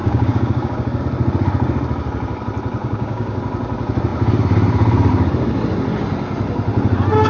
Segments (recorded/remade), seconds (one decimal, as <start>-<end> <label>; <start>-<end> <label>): 0.0-1.0 remade; 1.0-2.8 recorded; 2.8-3.4 remade; 3.4-7.3 recorded